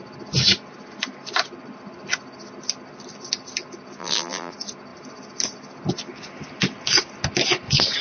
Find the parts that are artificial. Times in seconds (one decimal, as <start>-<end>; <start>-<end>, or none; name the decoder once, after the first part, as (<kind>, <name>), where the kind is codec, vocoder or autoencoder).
4.0-4.5 (vocoder, BigVGAN v2)